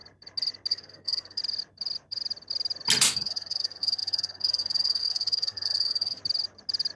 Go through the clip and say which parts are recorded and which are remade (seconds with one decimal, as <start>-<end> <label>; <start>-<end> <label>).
0.0-0.7 recorded; 0.7-1.4 remade; 1.4-3.1 recorded; 3.1-6.2 remade; 6.2-7.0 recorded